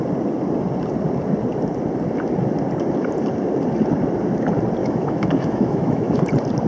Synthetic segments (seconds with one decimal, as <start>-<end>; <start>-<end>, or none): 4.8-6.2